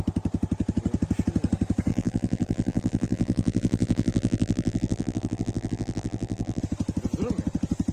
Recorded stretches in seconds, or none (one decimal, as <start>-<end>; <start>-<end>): 0.0-1.9; 6.6-7.9